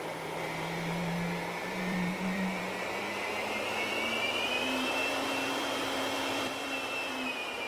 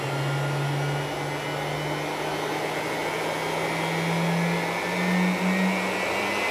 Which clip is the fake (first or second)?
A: first